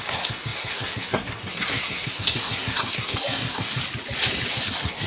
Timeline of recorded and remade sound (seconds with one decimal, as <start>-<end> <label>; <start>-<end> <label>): 0.0-3.8 remade; 3.8-4.6 recorded; 4.6-5.1 remade